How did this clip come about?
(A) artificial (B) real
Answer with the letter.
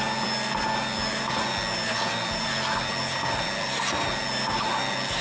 B